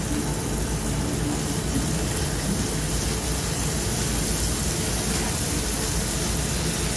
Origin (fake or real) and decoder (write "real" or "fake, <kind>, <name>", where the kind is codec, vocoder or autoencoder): real